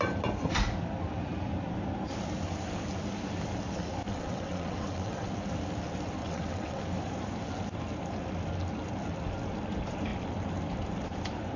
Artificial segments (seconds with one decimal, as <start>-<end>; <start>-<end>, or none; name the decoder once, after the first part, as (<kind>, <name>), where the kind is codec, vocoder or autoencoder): 4.1-5.3 (vocoder, WaveNeXt); 6.2-6.8